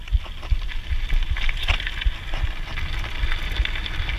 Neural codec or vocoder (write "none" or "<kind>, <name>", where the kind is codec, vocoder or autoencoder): none